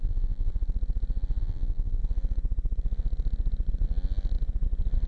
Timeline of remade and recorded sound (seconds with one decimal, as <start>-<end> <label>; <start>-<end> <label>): 0.0-0.5 remade; 0.5-1.4 recorded; 1.4-2.0 remade; 2.0-5.1 recorded